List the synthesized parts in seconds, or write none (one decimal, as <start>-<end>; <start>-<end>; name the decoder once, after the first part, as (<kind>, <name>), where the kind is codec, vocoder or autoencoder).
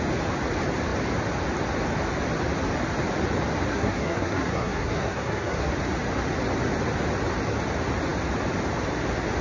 3.7-5.7 (codec, SNAC)